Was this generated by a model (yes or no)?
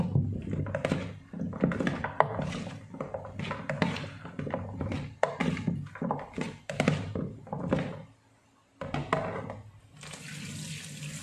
no